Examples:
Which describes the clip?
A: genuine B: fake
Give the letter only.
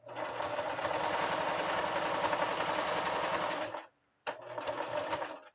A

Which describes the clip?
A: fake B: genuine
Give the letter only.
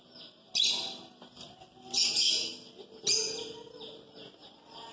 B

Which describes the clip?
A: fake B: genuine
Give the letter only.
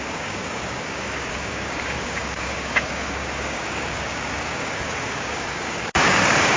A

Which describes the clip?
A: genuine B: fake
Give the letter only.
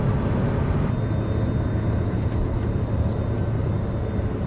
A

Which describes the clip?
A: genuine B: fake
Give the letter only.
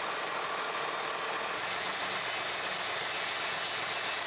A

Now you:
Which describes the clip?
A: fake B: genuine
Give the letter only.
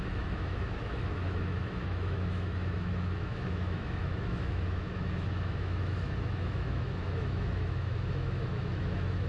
A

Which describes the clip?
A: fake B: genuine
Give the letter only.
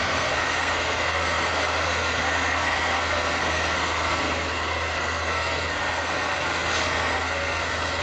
A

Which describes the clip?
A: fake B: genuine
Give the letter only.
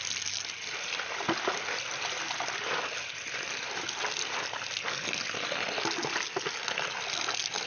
B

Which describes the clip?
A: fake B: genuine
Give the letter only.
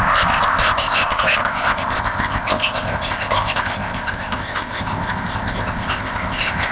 A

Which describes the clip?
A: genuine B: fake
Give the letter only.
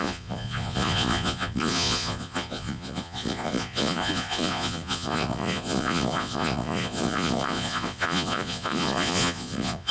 B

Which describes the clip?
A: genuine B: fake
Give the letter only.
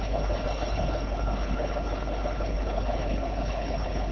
B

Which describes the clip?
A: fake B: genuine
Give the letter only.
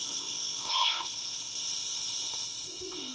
A